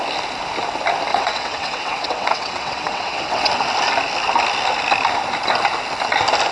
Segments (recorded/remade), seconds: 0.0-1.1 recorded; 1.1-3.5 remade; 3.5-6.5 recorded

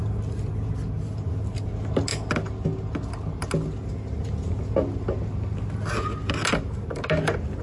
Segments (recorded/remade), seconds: 0.0-7.6 recorded

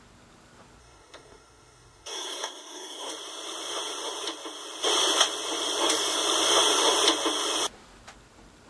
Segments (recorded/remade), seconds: 0.0-0.8 recorded; 0.8-3.1 remade; 3.1-8.7 recorded

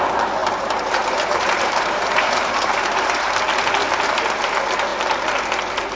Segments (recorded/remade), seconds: 0.0-0.4 recorded; 0.4-3.3 remade; 3.3-6.0 recorded

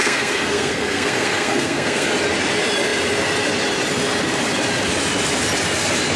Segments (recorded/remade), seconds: 0.0-2.1 remade; 2.1-6.2 recorded

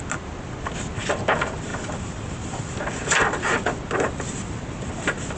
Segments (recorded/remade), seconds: 0.0-5.4 recorded